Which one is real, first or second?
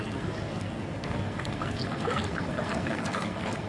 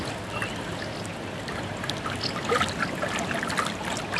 second